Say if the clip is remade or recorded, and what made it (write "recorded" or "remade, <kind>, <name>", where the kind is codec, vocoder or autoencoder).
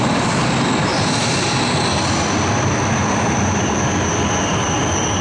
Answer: recorded